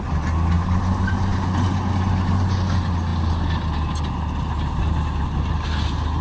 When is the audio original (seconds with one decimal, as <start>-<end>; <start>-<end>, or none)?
0.0-6.2